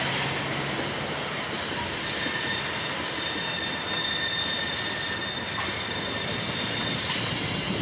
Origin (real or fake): real